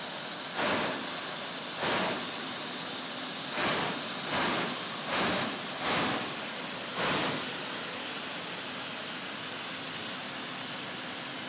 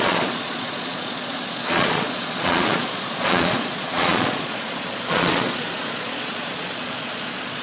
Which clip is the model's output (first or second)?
second